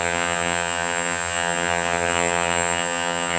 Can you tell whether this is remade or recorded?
remade